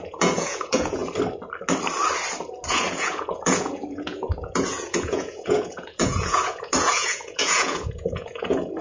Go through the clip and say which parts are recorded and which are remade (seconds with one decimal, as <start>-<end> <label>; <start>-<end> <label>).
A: 0.0-1.0 remade; 1.0-2.7 recorded; 2.7-8.8 remade